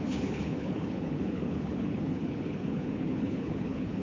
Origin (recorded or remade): remade